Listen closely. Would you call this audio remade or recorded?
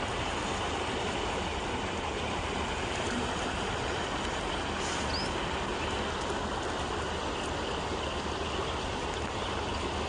recorded